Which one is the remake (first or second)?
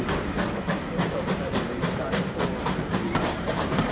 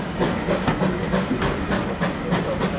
first